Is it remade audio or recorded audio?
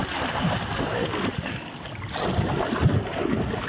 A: recorded